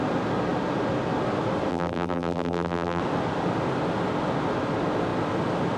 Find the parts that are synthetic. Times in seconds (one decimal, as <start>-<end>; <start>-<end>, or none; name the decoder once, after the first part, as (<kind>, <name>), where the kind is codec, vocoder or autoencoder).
1.7-3.0 (vocoder, BigVGAN v2)

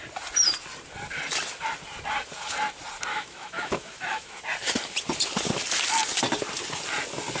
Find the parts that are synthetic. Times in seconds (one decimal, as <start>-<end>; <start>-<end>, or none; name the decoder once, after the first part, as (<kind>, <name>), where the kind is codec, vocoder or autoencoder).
3.1-4.4 (autoencoder, DAC-VAE)

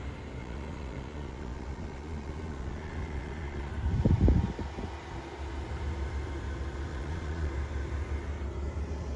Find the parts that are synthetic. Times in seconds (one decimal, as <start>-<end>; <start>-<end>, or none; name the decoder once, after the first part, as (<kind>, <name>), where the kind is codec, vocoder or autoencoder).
0.4-3.7 (vocoder, Vocos); 6.9-7.5

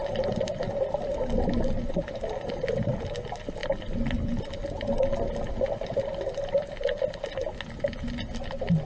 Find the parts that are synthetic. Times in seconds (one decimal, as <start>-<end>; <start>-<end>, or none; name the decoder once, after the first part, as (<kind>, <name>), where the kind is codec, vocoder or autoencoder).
none

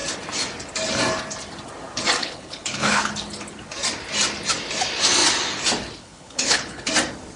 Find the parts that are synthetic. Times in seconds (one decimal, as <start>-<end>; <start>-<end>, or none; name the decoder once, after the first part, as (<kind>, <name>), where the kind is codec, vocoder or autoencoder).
2.2-3.1 (codec, HILCodec); 6.0-6.9